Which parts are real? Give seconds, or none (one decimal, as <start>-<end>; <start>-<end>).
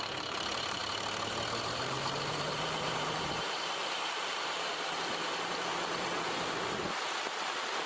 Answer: 0.8-1.6